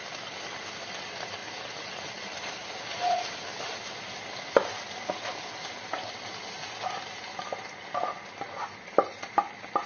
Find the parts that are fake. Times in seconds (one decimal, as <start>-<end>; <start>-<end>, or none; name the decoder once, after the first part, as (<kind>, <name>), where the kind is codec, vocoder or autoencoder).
none